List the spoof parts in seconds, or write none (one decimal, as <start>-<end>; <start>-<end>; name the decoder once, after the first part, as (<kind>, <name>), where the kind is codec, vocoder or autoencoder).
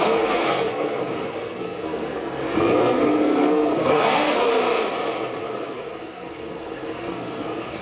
0.0-4.5 (codec, SNAC); 5.4-7.8